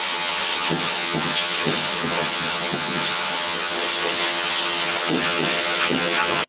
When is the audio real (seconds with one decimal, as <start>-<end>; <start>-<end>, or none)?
none